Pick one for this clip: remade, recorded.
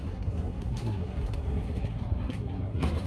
remade